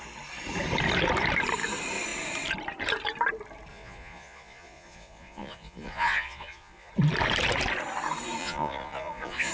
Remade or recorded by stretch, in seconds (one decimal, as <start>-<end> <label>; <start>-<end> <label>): 0.0-3.7 recorded; 3.7-6.9 remade; 6.9-8.4 recorded; 8.4-9.5 remade